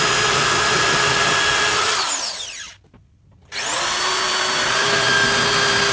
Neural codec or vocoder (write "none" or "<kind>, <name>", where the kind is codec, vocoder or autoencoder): none